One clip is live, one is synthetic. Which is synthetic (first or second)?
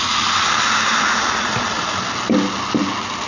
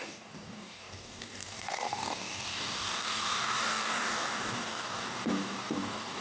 second